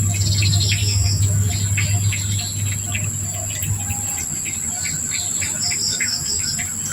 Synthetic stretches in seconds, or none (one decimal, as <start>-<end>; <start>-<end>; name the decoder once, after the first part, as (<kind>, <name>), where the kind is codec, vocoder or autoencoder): 0.8-1.5 (codec, DAC); 5.9-6.4